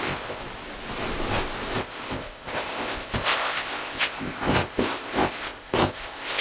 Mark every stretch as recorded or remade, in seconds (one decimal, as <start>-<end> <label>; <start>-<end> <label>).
0.0-0.4 remade; 0.4-1.8 recorded; 1.8-6.4 remade